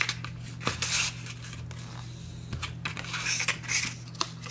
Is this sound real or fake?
real